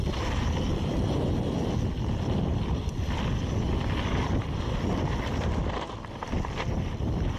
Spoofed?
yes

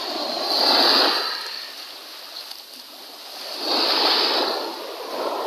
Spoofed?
no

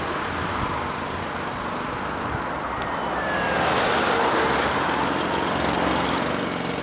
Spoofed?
no